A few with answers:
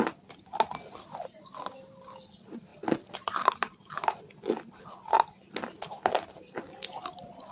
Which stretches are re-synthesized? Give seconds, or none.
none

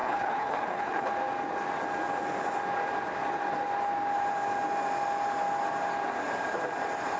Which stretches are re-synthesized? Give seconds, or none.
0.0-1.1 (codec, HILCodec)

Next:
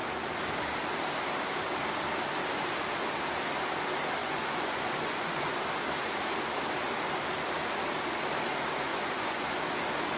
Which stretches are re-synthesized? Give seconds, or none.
4.2-5.6 (vocoder, Vocos); 8.9-9.6